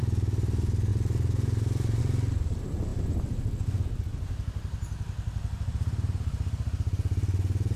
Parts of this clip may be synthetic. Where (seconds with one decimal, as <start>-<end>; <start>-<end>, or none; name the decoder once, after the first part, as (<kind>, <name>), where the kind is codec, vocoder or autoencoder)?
0.9-2.0 (vocoder, BigVGAN v2)